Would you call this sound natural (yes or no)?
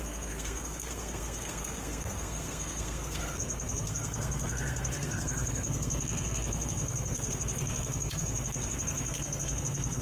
no